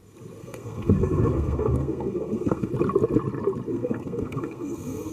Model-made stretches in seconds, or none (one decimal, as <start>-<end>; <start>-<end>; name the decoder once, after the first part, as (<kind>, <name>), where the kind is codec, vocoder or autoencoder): 0.4-2.7 (codec, SNAC); 3.7-5.1